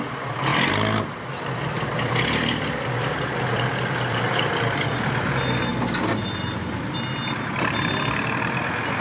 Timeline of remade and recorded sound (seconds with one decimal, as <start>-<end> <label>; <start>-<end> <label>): 0.0-0.5 recorded; 0.5-5.3 remade; 5.3-5.7 recorded; 5.7-6.2 remade; 6.2-9.0 recorded